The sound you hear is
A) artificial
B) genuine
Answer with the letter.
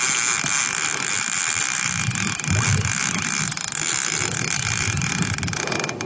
B